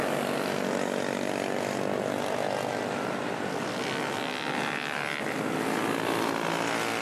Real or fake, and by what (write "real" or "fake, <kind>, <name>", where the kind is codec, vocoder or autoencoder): real